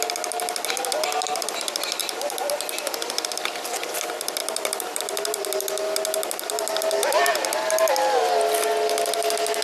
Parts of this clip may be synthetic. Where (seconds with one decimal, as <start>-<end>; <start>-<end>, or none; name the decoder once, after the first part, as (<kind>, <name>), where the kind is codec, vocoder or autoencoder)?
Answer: 2.0-2.9 (vocoder, BigVGAN v2); 4.4-5.0